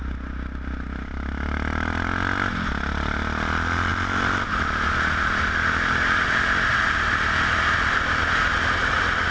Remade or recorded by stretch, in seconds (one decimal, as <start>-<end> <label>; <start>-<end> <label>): 0.0-9.3 recorded